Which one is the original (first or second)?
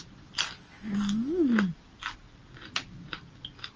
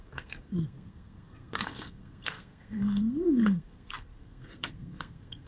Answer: first